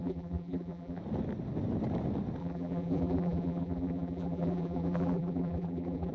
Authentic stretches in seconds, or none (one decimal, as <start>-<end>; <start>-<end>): 1.0-2.4